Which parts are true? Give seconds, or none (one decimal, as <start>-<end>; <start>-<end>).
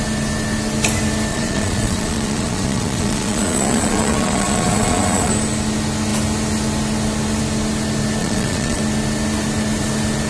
0.0-1.3; 5.3-8.2; 8.8-10.3